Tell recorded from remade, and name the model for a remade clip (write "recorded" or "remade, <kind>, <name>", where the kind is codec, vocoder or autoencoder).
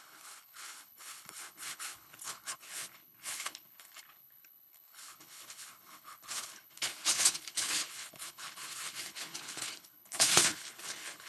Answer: remade, codec, HILCodec